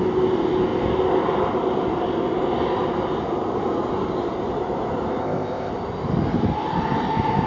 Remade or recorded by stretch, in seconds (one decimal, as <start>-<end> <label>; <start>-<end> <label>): 0.0-5.2 recorded; 5.2-5.7 remade; 5.7-7.5 recorded